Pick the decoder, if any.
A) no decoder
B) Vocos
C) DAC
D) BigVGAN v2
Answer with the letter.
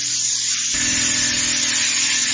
A